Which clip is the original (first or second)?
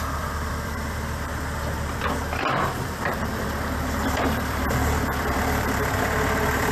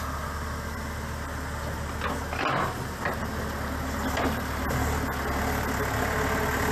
second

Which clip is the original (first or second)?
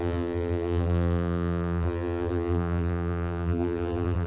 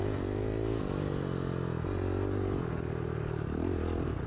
second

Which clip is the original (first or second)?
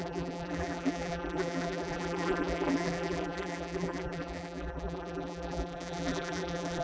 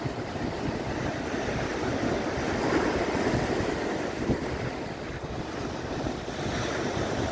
second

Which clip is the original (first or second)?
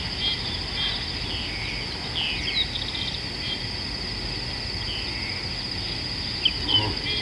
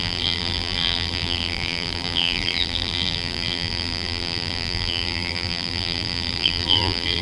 first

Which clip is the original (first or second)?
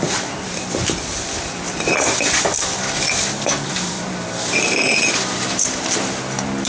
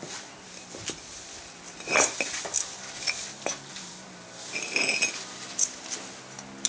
second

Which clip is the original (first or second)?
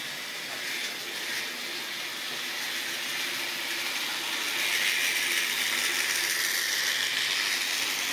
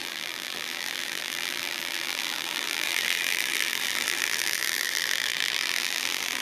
first